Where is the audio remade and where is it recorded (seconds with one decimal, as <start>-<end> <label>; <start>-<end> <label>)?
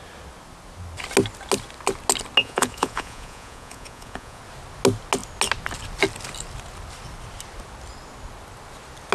0.0-2.4 recorded; 2.4-4.4 remade; 4.4-9.1 recorded